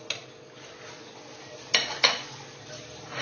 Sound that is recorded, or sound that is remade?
recorded